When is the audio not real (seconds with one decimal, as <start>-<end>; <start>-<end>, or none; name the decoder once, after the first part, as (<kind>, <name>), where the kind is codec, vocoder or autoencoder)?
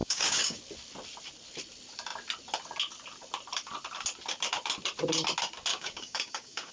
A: 0.0-0.6 (codec, DAC); 5.7-6.7